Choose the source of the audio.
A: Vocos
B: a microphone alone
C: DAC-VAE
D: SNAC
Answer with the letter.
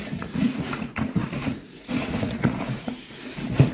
A